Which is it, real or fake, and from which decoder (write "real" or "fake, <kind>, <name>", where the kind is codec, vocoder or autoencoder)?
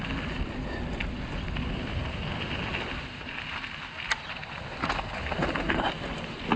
real